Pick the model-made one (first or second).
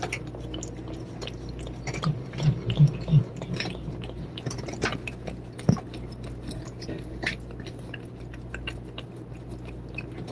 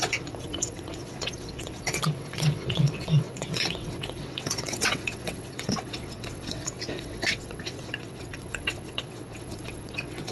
second